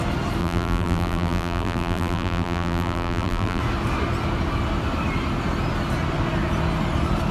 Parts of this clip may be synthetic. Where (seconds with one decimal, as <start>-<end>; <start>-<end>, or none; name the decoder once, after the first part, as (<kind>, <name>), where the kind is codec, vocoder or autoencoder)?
0.4-3.6 (vocoder, BigVGAN v2)